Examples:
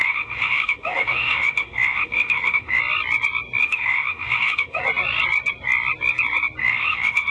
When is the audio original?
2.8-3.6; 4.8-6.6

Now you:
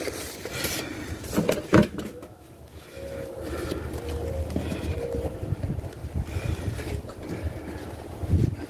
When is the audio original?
0.0-1.7; 3.3-8.7

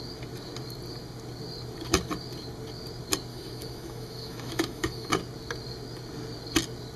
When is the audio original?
0.0-3.3; 5.1-7.0

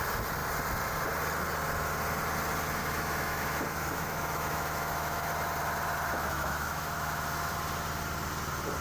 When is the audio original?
0.0-2.8; 5.3-6.1; 7.5-8.8

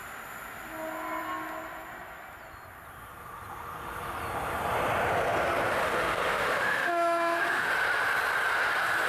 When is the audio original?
0.0-5.8; 7.7-9.1